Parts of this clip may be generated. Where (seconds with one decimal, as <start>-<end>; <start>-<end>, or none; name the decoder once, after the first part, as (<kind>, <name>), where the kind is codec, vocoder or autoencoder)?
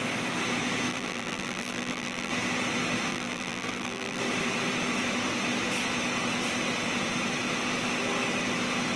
0.9-2.3 (vocoder, BigVGAN v2); 3.1-4.2